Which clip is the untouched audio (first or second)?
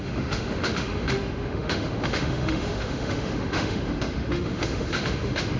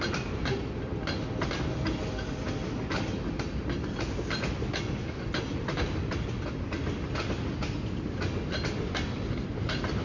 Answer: second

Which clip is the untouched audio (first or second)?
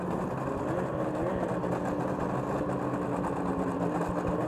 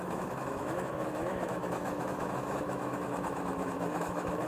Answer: first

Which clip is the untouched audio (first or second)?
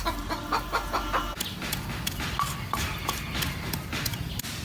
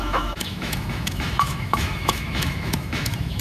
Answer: first